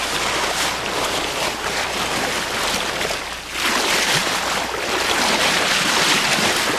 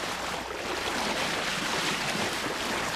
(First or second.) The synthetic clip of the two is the second